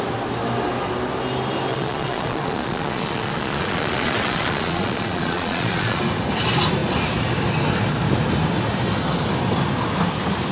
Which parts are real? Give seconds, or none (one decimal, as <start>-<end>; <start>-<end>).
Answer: 0.0-1.7; 6.0-10.5